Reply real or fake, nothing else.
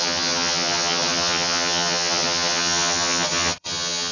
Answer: fake